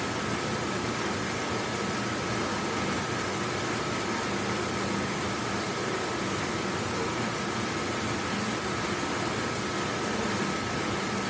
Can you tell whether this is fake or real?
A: real